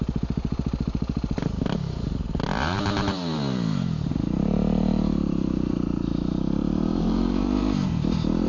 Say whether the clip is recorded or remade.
remade